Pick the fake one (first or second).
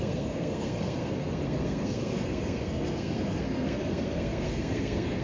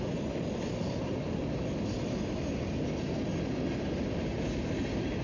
first